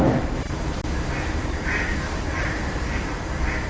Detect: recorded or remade recorded